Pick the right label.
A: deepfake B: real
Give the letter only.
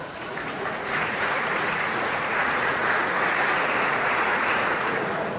A